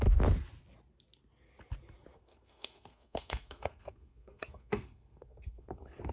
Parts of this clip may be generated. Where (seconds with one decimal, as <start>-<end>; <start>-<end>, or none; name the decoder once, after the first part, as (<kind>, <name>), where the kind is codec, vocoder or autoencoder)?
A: 2.1-6.1 (codec, SNAC)